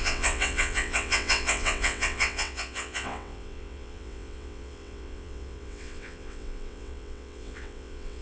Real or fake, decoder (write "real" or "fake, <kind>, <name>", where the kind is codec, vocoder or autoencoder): fake, vocoder, WaveNeXt